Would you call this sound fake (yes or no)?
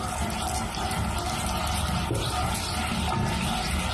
no